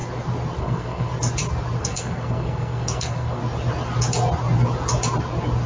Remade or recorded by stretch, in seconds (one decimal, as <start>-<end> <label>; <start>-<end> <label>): 0.0-0.6 recorded; 0.6-1.1 remade; 1.1-1.8 recorded; 1.8-3.4 remade; 3.4-5.7 recorded